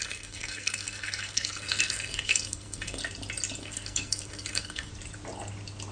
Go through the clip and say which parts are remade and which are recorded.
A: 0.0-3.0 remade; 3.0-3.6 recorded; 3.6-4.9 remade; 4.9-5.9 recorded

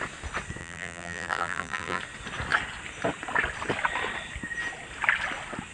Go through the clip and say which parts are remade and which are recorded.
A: 0.0-0.6 recorded; 0.6-2.0 remade; 2.0-5.7 recorded